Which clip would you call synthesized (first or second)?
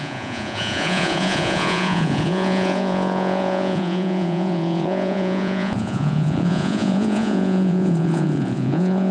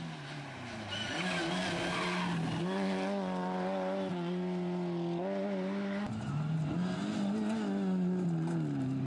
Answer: first